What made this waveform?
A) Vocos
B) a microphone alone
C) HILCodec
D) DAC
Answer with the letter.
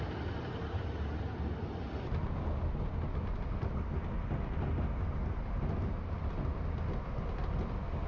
B